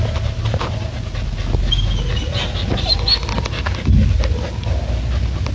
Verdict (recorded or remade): recorded